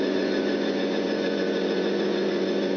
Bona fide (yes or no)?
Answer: no